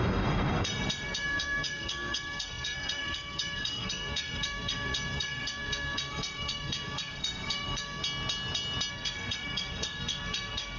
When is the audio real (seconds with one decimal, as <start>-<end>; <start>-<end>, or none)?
8.0-8.9